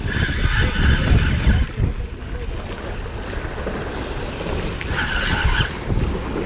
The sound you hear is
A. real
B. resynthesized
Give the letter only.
A